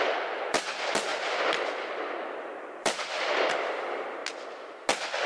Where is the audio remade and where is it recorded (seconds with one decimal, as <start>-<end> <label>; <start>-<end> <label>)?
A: 0.0-1.1 remade; 1.1-2.0 recorded; 2.0-4.2 remade; 4.2-5.3 recorded